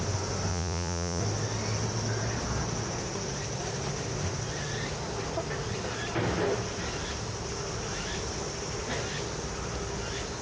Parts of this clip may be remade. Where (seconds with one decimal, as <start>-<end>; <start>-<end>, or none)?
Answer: 0.5-1.2